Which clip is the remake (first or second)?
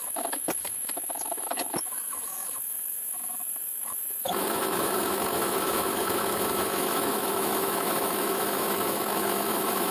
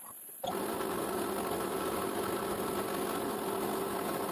first